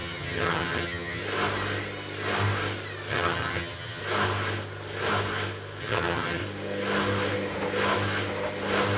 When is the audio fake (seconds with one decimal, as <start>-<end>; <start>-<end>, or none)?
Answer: 0.0-1.2; 3.1-4.0; 5.8-6.4